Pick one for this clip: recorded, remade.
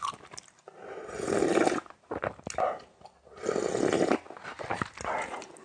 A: recorded